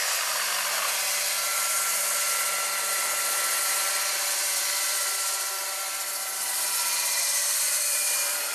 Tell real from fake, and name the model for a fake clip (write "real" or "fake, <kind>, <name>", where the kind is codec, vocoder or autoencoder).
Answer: fake, vocoder, BigVGAN v2